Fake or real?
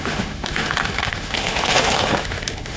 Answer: fake